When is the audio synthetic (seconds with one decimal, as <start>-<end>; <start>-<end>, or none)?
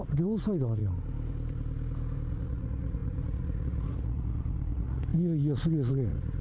0.0-0.8; 2.3-5.1; 5.9-6.4